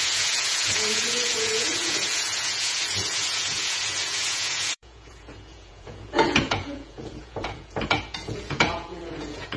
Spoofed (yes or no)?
yes